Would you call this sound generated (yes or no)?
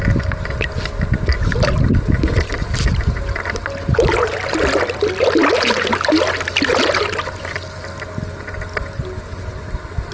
no